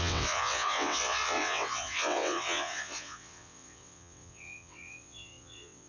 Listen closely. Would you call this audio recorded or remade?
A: remade